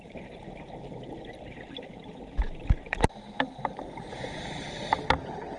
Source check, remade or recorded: recorded